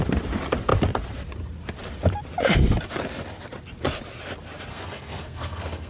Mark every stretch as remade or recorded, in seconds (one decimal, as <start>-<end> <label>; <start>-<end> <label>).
0.0-4.7 recorded; 4.7-5.9 remade